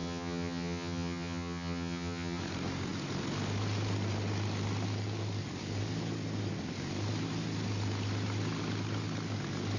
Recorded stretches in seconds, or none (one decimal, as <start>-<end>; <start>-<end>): 2.4-9.8